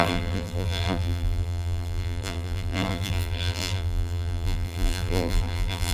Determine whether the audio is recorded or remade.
remade